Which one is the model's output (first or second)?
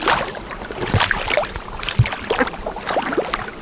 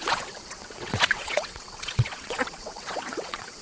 second